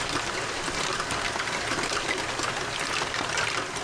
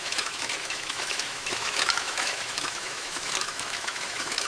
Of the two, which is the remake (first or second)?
second